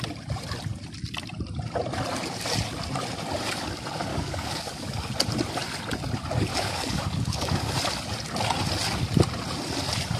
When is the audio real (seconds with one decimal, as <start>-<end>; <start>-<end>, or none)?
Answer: 0.0-4.1; 5.1-6.5; 7.7-10.2

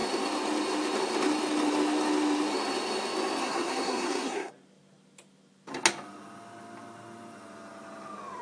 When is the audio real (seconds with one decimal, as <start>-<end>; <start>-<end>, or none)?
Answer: 0.0-3.4; 4.5-8.4

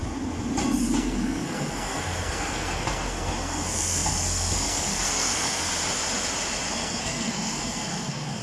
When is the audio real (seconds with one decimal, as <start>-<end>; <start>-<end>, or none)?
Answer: 0.0-0.8; 5.7-6.7

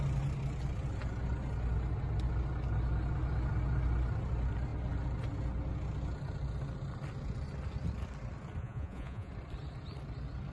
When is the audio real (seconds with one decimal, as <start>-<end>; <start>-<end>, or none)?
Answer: 0.0-8.6; 9.3-10.5

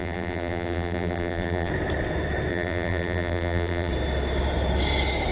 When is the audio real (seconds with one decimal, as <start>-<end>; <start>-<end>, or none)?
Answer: 1.7-2.5; 3.9-5.3